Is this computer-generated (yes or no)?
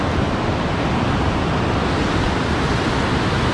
no